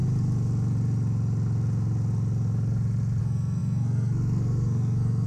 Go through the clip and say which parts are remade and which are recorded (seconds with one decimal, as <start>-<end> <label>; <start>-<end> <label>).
0.0-3.2 recorded; 3.2-5.3 remade